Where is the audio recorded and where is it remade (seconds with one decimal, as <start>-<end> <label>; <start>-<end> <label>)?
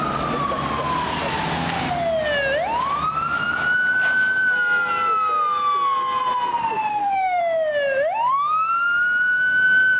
0.0-6.9 recorded; 6.9-7.4 remade; 7.4-10.0 recorded